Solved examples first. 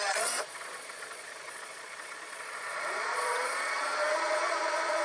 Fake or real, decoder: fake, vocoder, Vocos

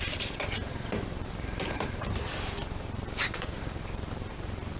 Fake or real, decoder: fake, vocoder, BigVGAN v2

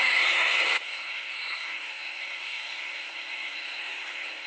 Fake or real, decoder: fake, codec, SNAC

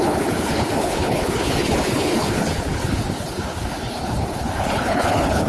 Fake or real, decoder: fake, codec, HILCodec